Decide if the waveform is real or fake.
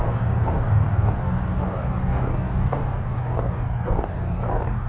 fake